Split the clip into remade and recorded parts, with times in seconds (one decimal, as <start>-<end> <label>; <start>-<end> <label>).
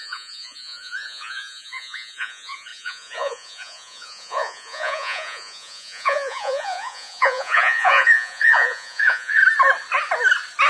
0.0-9.4 remade; 9.4-10.7 recorded